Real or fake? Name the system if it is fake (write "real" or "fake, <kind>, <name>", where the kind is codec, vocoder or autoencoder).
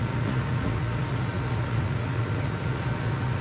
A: fake, vocoder, Vocos